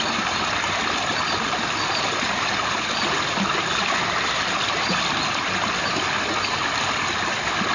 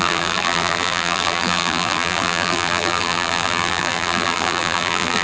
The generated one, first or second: second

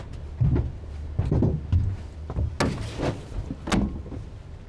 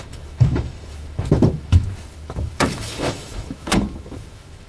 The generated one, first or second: second